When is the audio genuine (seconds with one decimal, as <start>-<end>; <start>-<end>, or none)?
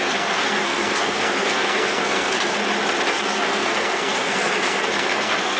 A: 2.6-3.1